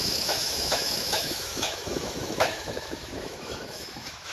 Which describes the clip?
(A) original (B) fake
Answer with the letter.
B